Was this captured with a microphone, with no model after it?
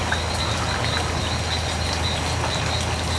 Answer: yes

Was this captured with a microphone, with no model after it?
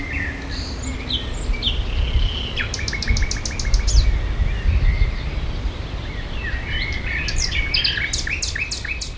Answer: yes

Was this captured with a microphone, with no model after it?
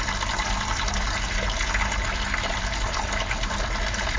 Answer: yes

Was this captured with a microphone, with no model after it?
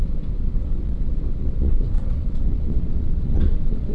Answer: no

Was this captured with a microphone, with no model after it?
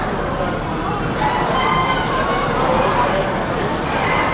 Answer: yes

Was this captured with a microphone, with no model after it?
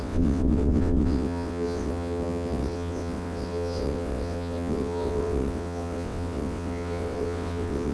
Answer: no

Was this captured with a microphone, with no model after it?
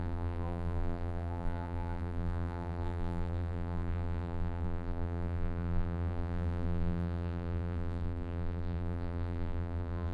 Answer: no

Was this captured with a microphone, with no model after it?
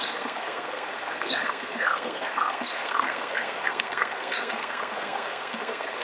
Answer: no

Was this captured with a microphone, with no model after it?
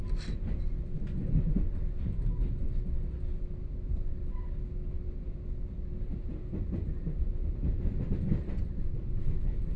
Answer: yes